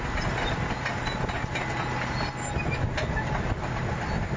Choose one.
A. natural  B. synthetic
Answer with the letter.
A